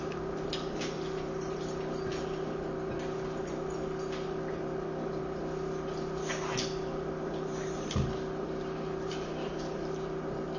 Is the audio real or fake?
real